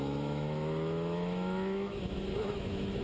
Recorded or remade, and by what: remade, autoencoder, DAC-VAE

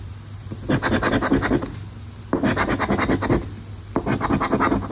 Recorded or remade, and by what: recorded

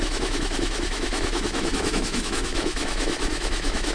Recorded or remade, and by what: remade, autoencoder, DAC-VAE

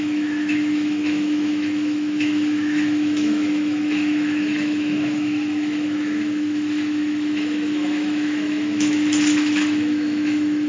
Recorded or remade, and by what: remade, autoencoder, DAC-VAE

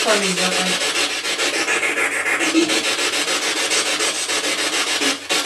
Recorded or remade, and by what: recorded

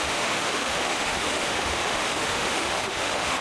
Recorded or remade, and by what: remade, autoencoder, DAC-VAE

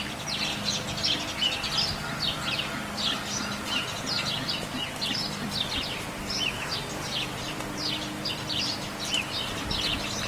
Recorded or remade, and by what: recorded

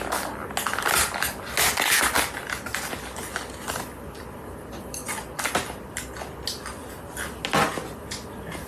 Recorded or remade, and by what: recorded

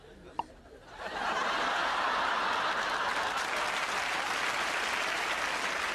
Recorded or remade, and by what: recorded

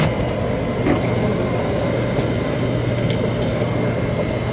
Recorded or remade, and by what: recorded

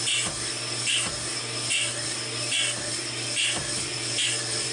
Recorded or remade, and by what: recorded